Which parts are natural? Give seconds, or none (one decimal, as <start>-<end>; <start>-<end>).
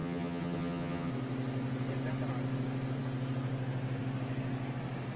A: 1.1-5.2